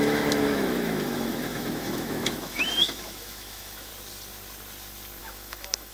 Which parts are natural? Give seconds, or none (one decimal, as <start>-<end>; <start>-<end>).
3.9-5.2